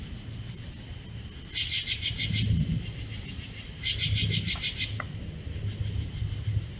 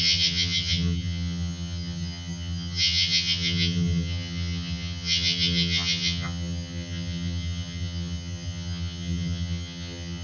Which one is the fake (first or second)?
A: second